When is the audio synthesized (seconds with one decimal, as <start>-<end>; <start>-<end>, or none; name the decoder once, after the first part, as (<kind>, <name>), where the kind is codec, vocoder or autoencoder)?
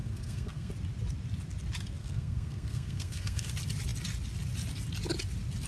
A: 0.0-0.7 (codec, SNAC); 2.0-3.5